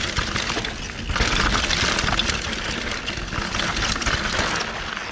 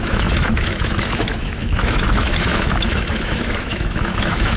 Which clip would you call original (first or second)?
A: first